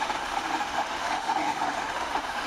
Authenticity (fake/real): fake